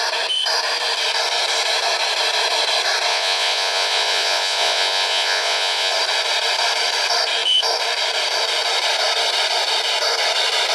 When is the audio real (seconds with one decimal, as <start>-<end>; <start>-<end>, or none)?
0.0-3.1; 5.9-10.7